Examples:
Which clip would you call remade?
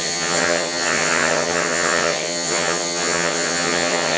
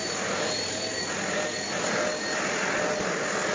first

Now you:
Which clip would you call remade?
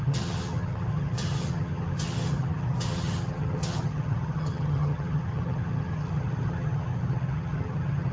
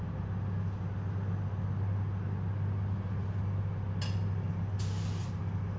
first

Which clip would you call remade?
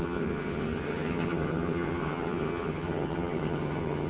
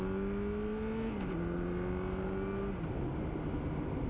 first